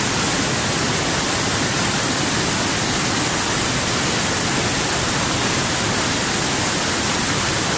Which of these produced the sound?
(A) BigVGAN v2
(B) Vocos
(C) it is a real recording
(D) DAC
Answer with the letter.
C